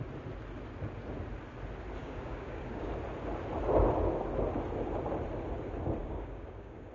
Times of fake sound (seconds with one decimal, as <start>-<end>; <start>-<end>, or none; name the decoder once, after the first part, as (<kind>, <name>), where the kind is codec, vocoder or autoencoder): 2.0-2.9 (codec, DAC); 6.0-6.9